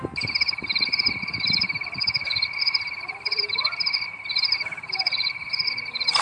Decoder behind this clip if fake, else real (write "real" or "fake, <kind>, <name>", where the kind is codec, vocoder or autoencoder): fake, vocoder, BigVGAN v2